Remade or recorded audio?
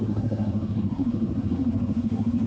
remade